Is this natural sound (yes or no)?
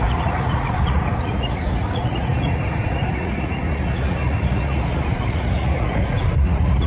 no